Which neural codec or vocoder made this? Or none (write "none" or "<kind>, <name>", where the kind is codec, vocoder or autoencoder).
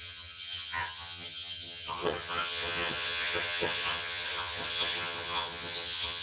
vocoder, HiFi-GAN